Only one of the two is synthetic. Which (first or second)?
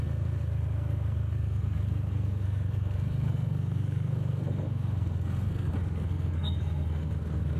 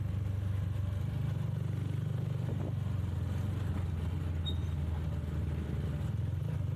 first